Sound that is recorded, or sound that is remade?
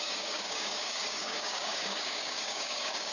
remade